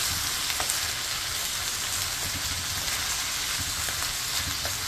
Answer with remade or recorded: recorded